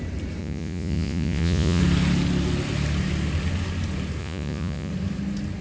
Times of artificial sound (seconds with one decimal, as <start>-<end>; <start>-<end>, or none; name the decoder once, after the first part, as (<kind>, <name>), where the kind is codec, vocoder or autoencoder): 0.4-1.8 (vocoder, Vocos); 4.2-4.9